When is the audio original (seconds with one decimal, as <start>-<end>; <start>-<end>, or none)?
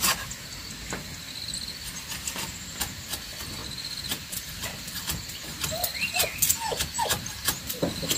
0.0-8.2